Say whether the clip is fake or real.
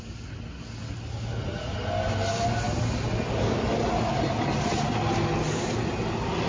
real